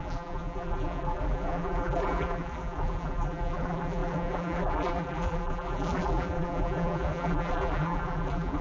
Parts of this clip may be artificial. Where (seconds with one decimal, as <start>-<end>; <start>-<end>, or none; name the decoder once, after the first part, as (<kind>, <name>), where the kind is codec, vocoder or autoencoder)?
0.0-8.6 (vocoder, BigVGAN v2)